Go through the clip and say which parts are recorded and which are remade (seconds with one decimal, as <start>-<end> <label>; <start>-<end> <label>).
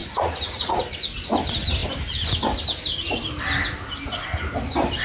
0.0-0.9 remade; 0.9-5.0 recorded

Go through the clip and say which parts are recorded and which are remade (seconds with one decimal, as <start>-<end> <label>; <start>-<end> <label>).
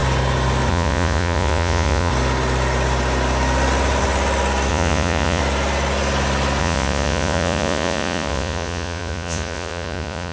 0.0-0.7 recorded; 0.7-2.1 remade; 2.1-4.7 recorded; 4.7-5.4 remade; 5.4-6.6 recorded; 6.6-10.3 remade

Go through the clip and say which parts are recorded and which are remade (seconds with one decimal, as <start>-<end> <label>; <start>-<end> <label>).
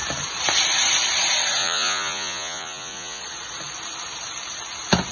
0.0-1.6 recorded; 1.6-3.2 remade; 3.2-5.1 recorded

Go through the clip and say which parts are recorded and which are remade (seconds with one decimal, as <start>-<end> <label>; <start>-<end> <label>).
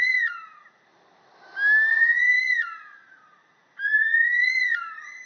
0.0-0.9 remade; 0.9-1.9 recorded; 1.9-5.3 remade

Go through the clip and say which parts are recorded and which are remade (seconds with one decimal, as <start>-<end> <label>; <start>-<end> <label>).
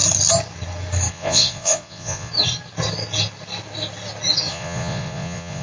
0.0-1.1 recorded; 1.1-2.3 remade; 2.3-4.5 recorded; 4.5-5.6 remade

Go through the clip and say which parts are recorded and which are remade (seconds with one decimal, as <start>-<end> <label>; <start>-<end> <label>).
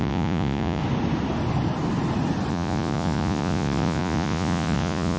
0.0-0.8 remade; 0.8-2.5 recorded; 2.5-5.2 remade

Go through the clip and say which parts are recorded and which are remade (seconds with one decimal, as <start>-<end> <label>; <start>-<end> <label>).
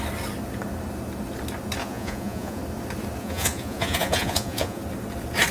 0.0-1.8 recorded; 1.8-2.6 remade; 2.6-3.2 recorded; 3.2-4.8 remade; 4.8-5.5 recorded